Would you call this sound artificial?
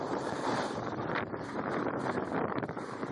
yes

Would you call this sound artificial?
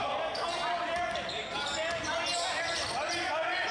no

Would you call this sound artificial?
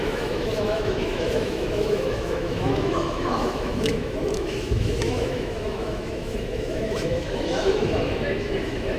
yes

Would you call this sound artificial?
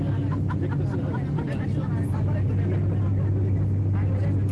no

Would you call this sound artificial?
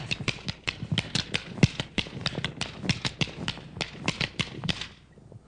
no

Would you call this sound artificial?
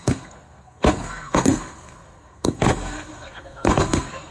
yes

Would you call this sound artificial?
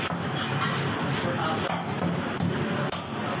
no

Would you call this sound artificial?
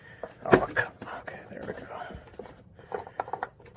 yes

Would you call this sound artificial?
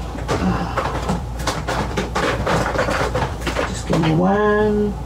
yes